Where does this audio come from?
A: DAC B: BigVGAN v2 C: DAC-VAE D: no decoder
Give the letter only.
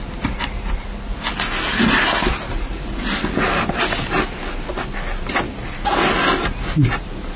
D